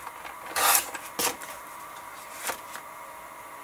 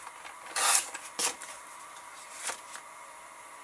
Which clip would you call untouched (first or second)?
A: first